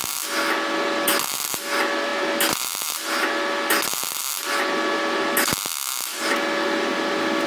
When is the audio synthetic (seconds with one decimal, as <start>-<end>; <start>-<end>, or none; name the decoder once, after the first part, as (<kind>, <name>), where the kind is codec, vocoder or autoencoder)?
none